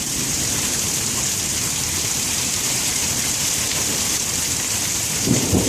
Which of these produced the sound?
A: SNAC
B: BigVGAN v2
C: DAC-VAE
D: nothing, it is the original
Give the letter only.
B